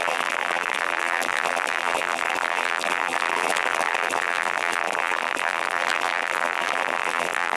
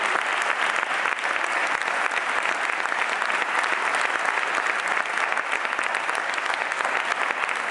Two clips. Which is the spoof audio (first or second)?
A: first